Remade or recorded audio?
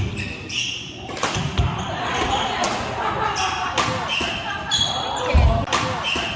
recorded